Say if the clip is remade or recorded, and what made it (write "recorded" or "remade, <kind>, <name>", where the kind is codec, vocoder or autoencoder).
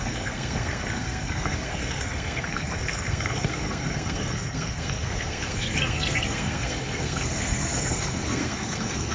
remade, codec, SNAC